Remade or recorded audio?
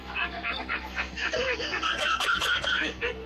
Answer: remade